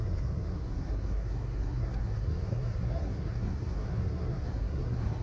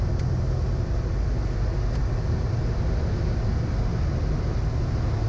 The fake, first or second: first